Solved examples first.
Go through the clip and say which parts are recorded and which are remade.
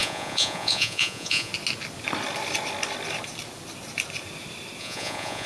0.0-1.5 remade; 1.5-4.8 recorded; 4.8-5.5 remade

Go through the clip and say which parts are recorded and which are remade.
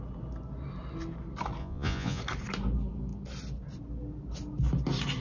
0.0-1.6 recorded; 1.6-2.2 remade; 2.2-5.2 recorded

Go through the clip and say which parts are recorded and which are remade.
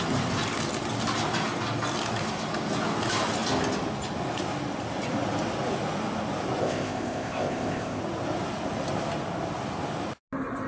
0.0-6.6 recorded; 6.6-8.0 remade; 8.0-10.7 recorded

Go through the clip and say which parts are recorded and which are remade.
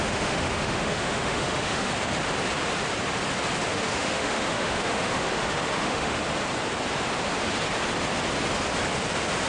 0.0-1.9 remade; 1.9-3.7 recorded; 3.7-6.2 remade; 6.2-9.5 recorded